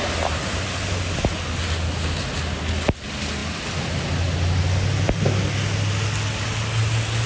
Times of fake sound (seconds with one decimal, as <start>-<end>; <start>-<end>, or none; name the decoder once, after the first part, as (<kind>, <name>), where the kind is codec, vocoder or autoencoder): none